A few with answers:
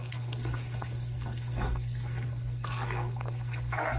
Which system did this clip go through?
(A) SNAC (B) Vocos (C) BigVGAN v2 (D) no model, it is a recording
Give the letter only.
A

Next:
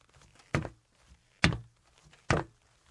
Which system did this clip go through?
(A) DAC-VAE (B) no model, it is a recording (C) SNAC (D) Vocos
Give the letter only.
B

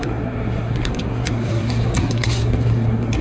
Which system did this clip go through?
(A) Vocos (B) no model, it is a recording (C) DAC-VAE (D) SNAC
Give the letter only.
D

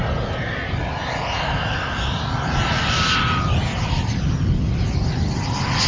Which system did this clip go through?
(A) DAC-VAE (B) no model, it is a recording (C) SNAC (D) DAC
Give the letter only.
B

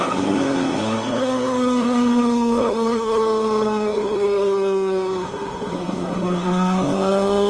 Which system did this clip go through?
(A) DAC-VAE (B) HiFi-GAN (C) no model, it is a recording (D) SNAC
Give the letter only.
D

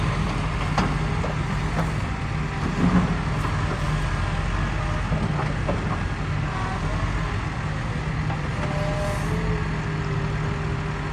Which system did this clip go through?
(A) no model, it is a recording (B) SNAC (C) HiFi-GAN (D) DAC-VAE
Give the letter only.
A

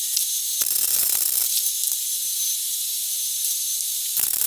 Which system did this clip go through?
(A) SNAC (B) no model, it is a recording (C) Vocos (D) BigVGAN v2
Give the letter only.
B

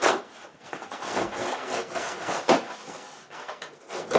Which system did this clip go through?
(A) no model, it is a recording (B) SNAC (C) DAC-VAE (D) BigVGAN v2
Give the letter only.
B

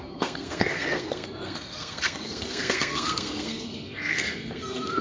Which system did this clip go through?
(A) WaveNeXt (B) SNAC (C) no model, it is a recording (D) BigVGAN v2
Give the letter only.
B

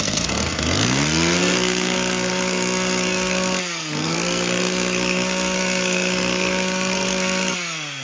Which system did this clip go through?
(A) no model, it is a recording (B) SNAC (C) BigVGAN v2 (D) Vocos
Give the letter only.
B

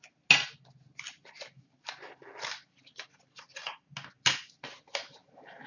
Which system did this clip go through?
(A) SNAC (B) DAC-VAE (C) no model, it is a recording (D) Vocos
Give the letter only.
C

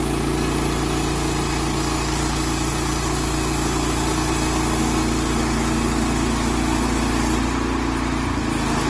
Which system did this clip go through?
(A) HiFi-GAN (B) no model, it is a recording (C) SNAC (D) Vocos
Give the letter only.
B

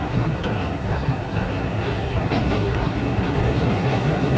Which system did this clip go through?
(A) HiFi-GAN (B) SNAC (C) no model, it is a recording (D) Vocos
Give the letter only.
B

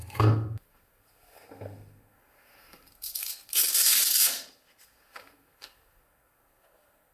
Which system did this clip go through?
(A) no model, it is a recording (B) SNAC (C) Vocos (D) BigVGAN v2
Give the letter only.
B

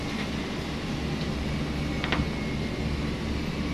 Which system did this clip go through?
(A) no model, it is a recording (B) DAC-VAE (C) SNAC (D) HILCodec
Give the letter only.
A